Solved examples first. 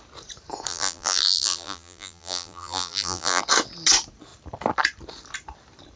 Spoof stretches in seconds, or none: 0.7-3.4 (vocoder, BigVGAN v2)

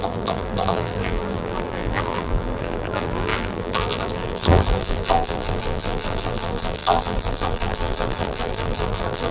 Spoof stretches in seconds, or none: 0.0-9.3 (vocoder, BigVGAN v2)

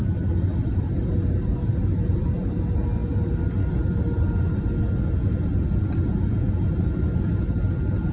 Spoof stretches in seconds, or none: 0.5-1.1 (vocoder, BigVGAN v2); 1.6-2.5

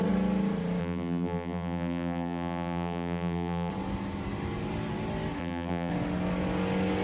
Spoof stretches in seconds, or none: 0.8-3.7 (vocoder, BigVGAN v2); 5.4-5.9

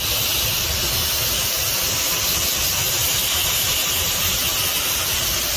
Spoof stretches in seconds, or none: 3.4-4.3 (vocoder, BigVGAN v2)